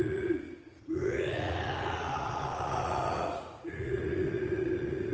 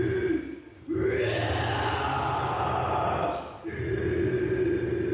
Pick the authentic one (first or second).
second